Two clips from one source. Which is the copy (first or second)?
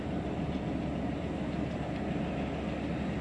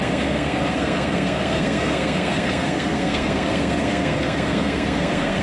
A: second